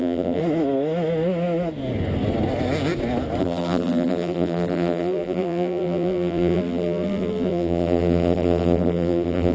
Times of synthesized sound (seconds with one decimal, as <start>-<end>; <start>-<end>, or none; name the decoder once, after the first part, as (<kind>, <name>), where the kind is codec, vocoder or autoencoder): 0.0-0.4 (vocoder, BigVGAN v2); 3.4-9.5